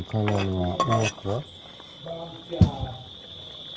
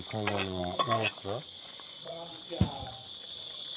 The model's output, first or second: second